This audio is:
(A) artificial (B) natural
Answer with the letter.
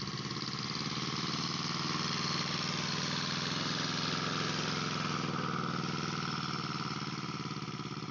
B